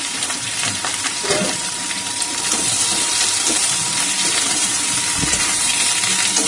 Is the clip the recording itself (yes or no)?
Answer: no